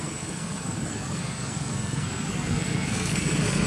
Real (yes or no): no